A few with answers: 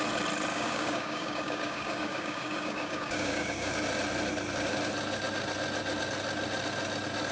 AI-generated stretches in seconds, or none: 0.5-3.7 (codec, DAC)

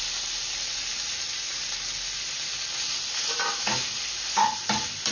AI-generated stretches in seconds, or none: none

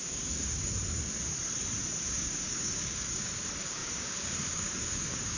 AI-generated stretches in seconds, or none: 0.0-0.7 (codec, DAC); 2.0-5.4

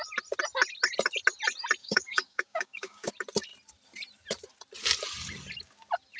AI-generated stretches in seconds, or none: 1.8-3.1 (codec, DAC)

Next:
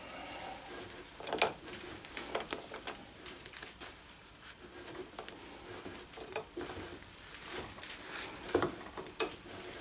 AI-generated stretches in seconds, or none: none

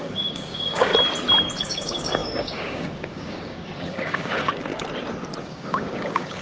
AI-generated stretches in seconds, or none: 0.0-0.9 (codec, DAC); 1.6-4.7; 5.4-6.4